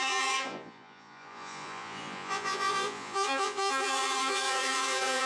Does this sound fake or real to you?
fake